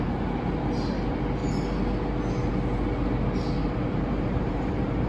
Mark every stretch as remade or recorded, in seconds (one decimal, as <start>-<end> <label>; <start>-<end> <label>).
0.0-3.6 recorded; 3.6-5.1 remade